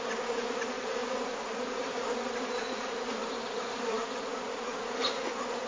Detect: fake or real fake